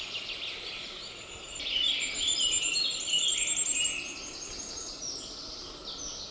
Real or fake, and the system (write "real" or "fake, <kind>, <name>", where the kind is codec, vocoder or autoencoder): real